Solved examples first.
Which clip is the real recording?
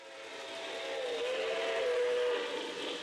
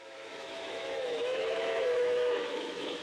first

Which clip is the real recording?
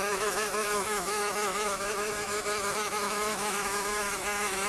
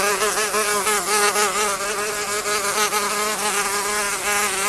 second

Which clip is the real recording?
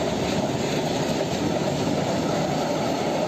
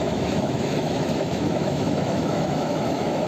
first